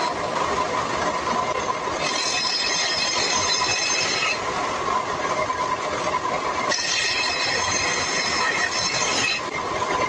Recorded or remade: recorded